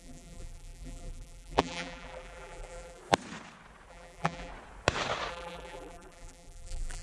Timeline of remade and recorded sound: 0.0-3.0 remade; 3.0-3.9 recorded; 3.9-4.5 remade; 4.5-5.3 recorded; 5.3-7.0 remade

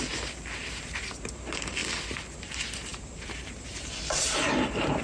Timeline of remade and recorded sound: 0.0-1.8 remade; 1.8-2.4 recorded; 2.4-5.0 remade

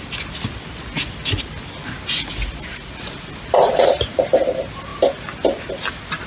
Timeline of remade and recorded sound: 0.0-2.7 recorded; 2.7-3.3 remade; 3.3-6.3 recorded